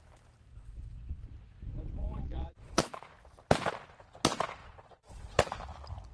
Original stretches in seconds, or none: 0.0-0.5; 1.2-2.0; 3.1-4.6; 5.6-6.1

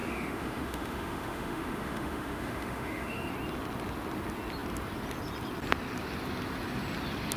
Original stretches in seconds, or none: 3.3-7.4

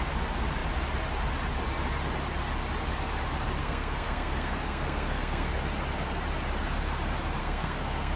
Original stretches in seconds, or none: 0.0-3.6; 5.5-7.4

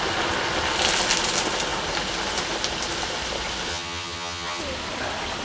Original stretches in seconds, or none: 0.0-3.7; 4.6-5.4

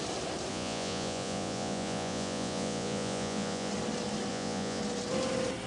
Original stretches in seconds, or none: 0.0-0.5; 3.7-4.3; 4.8-5.7

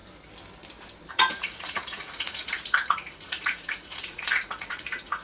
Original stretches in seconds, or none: 0.0-1.1